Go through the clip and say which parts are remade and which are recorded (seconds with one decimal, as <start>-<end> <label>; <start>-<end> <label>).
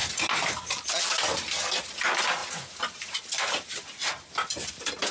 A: 0.0-2.4 recorded; 2.4-4.3 remade; 4.3-5.1 recorded